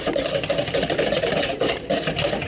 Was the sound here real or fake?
real